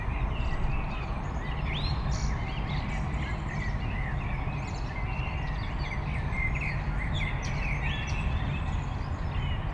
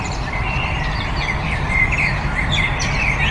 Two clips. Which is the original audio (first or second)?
first